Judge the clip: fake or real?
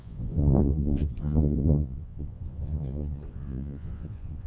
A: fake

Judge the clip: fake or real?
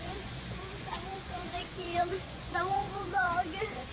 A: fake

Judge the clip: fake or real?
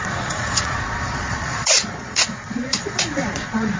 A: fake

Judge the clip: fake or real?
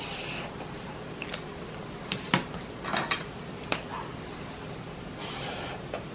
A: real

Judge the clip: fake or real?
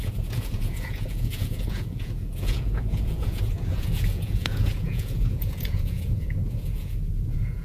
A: fake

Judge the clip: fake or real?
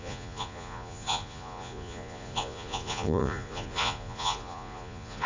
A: fake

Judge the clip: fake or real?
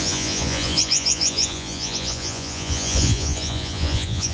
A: fake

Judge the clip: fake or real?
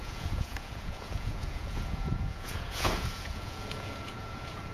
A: fake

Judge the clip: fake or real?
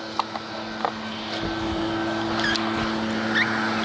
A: real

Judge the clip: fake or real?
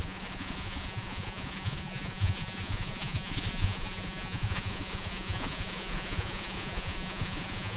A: fake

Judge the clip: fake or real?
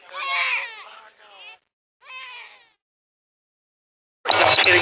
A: real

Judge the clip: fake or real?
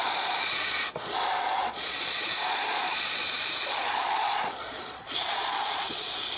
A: fake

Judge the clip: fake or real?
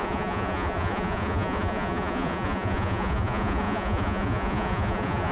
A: fake